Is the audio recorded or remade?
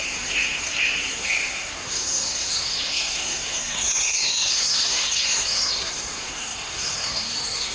remade